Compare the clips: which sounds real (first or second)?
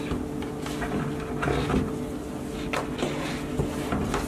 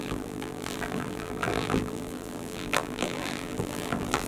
first